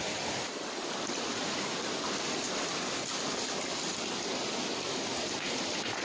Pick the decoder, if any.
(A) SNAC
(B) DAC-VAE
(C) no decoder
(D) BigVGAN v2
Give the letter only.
C